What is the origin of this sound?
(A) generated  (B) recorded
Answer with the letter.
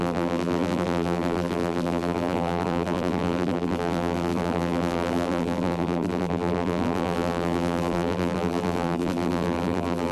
A